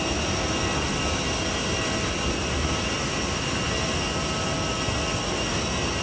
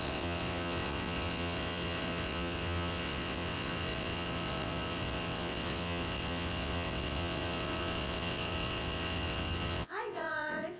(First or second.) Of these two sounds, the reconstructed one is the second